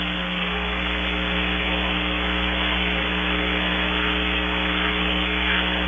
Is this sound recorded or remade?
remade